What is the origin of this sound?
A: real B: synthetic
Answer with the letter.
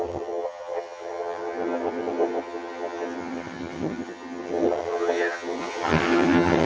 B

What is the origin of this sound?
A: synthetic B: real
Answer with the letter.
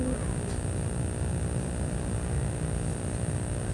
B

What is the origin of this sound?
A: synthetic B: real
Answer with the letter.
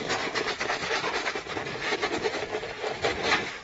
B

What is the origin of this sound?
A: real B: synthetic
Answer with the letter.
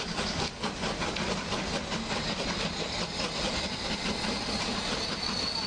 A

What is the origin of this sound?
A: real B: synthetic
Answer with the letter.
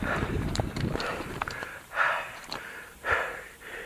B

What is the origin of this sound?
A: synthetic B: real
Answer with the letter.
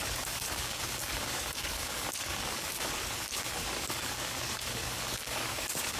A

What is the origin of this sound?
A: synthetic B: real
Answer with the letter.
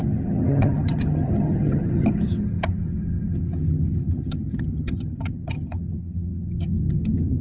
A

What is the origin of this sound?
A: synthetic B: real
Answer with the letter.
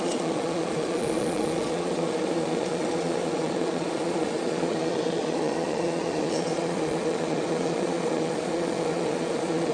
A